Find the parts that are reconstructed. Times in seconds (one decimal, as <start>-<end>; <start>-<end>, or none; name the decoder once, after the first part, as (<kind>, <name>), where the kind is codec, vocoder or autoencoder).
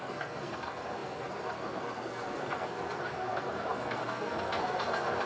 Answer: 0.0-5.3 (codec, SNAC)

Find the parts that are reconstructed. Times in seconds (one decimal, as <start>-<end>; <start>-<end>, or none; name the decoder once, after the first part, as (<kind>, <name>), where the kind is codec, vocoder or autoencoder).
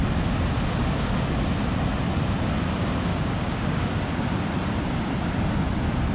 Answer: 3.1-3.9 (codec, DAC)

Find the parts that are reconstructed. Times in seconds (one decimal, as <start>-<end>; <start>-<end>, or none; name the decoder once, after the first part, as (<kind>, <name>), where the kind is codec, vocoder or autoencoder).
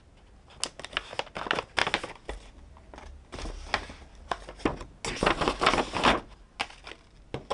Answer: none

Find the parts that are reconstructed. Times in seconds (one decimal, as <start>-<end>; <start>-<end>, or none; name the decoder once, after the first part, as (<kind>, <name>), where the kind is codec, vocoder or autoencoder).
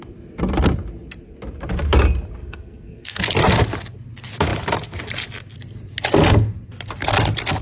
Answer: 2.4-3.2 (codec, SNAC)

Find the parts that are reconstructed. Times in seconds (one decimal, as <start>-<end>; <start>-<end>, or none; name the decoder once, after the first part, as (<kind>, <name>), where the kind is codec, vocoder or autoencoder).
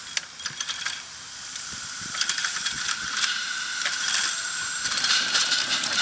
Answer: 2.4-6.0 (vocoder, BigVGAN v2)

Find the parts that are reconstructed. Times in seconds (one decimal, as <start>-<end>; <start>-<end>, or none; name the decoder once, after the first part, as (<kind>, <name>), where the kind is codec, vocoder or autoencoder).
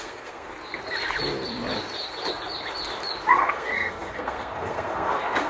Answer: 0.0-0.5 (codec, SNAC); 3.3-5.5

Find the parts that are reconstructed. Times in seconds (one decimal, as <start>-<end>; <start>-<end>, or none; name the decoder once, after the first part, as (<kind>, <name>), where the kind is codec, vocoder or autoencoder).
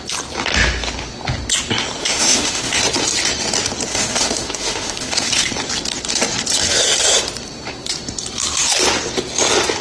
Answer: 2.0-2.8 (autoencoder, DAC-VAE); 3.9-5.5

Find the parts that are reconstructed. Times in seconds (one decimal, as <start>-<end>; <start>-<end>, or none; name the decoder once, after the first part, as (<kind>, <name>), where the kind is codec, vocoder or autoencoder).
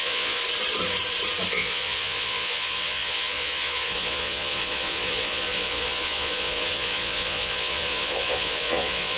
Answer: 0.0-0.4 (vocoder, Vocos); 1.5-9.2